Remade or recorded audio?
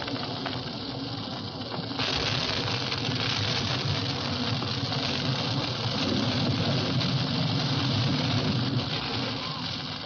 recorded